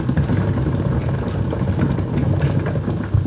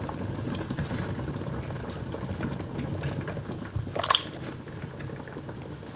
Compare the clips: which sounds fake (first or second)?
second